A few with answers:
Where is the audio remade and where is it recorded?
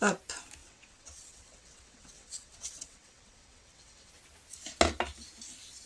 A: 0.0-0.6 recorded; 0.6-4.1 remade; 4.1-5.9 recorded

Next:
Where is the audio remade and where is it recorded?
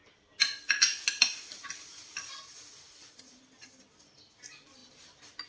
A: 0.0-5.5 recorded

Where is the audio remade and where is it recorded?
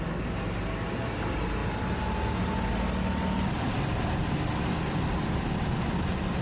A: 0.0-6.4 recorded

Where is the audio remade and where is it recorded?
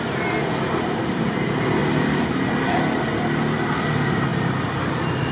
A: 0.0-5.3 recorded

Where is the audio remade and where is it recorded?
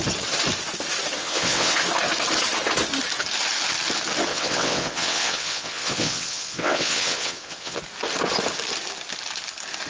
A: 0.0-1.2 recorded; 1.2-1.8 remade; 1.8-4.3 recorded; 4.3-7.8 remade; 7.8-9.9 recorded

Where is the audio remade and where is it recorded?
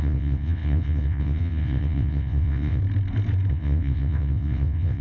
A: 0.0-2.8 remade; 2.8-3.5 recorded; 3.5-5.0 remade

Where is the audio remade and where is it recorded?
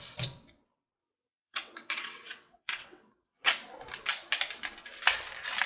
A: 0.0-1.0 recorded; 1.0-3.5 remade; 3.5-5.7 recorded